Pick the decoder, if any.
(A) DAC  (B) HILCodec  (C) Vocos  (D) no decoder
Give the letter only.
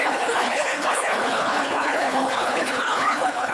B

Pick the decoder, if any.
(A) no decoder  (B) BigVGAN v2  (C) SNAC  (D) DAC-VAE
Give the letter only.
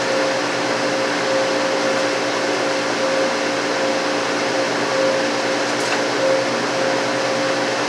A